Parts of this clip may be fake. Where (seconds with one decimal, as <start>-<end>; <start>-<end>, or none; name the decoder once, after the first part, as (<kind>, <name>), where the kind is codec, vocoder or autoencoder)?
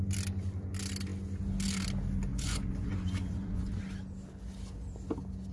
2.3-3.8 (vocoder, Vocos)